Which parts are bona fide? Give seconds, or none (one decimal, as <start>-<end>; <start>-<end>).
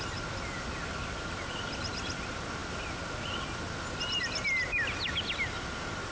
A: 0.0-6.1